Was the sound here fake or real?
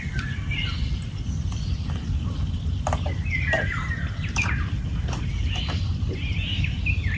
fake